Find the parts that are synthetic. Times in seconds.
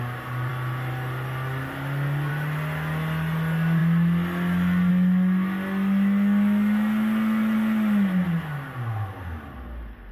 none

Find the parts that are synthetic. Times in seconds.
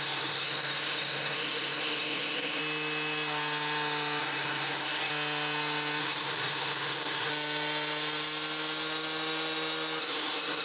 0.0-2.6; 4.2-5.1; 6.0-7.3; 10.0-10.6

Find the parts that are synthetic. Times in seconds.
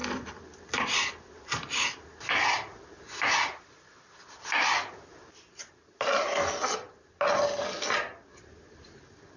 none